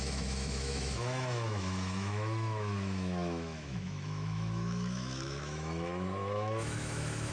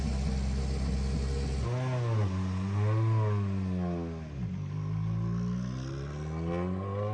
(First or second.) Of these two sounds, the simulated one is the first